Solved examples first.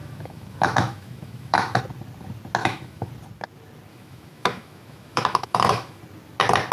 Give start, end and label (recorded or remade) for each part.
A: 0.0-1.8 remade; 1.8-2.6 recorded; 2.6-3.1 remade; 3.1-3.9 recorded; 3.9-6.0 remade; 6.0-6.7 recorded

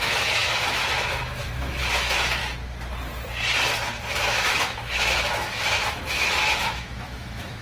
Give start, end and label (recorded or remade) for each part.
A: 0.0-2.4 remade; 2.4-4.1 recorded; 4.1-7.6 remade

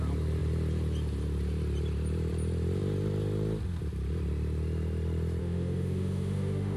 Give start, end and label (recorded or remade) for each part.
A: 0.0-5.4 recorded; 5.4-6.8 remade

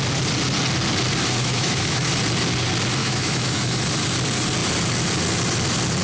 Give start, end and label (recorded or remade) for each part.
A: 0.0-1.4 recorded; 1.4-2.1 remade; 2.1-3.0 recorded; 3.0-3.8 remade; 3.8-6.0 recorded

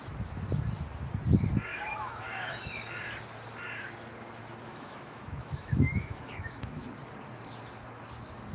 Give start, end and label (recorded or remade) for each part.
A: 0.0-1.7 recorded; 1.7-2.7 remade; 2.7-4.7 recorded; 4.7-6.8 remade; 6.8-8.5 recorded